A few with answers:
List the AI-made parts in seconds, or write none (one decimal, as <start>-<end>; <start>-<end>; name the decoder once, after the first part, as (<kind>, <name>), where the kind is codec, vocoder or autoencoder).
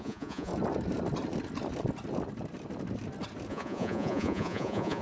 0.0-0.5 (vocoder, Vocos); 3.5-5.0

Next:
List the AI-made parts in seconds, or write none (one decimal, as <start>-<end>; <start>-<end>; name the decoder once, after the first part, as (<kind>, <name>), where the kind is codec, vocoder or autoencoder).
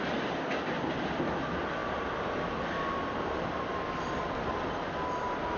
none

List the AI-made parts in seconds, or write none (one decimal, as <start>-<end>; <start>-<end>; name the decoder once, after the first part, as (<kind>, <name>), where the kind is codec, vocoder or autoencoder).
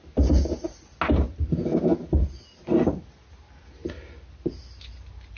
none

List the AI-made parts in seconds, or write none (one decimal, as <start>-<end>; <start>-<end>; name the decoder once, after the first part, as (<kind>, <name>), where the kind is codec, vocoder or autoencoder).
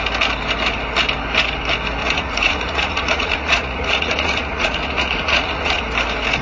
2.0-5.8 (vocoder, Vocos)